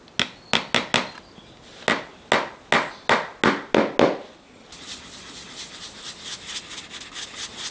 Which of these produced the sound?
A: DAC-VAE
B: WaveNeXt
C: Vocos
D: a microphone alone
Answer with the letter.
D